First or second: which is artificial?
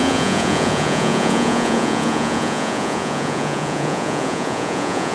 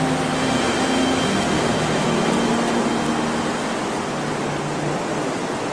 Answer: first